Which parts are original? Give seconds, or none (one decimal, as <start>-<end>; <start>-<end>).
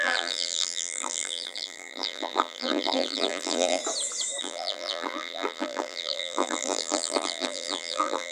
3.8-4.4